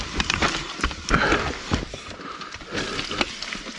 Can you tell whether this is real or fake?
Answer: real